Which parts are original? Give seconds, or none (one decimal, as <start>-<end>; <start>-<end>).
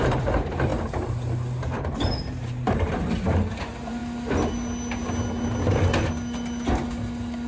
0.7-2.4; 4.0-7.5